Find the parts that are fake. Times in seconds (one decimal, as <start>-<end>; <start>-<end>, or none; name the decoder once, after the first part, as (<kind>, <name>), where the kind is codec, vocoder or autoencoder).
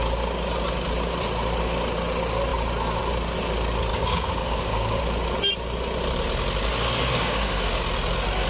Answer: 3.9-5.0 (codec, DAC); 7.0-7.8